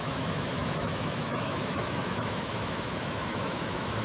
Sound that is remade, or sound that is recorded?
remade